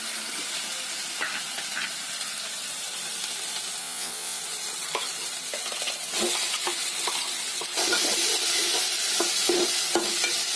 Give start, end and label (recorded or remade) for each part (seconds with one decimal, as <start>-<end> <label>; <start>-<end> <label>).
0.0-3.8 recorded; 3.8-4.4 remade; 4.4-10.6 recorded